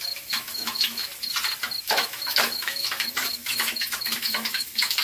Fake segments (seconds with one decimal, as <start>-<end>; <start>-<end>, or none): 0.0-1.1; 1.8-5.0